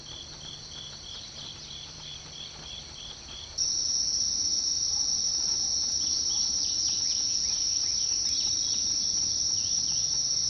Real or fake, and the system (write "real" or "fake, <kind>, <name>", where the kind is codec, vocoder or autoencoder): fake, vocoder, BigVGAN v2